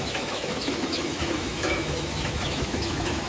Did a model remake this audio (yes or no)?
yes